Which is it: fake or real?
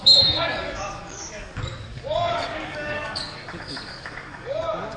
fake